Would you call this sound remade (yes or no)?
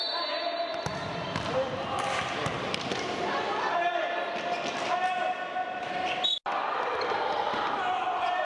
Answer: no